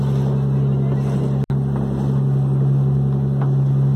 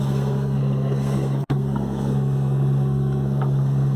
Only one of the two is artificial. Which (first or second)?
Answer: second